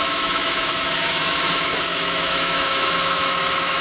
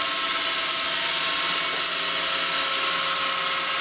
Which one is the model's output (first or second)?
first